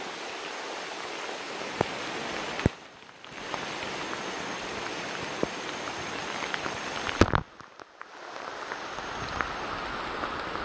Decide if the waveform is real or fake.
real